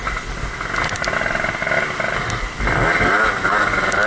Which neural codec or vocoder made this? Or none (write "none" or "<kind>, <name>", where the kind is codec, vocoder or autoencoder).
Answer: none